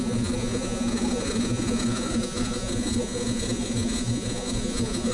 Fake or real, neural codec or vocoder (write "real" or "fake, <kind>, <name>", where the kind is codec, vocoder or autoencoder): fake, vocoder, Vocos